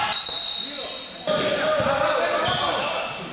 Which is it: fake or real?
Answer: real